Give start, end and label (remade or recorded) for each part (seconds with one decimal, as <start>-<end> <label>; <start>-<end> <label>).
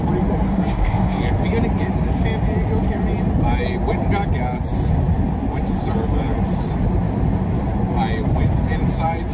0.0-0.5 recorded; 0.5-1.2 remade; 1.2-9.3 recorded